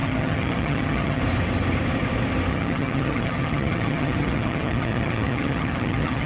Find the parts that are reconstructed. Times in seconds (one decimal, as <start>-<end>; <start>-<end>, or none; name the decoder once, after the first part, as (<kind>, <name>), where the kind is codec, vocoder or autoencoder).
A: 0.0-1.2 (vocoder, HiFi-GAN); 2.5-6.3